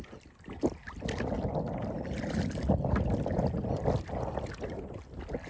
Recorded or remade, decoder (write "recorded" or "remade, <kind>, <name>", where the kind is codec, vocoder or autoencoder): recorded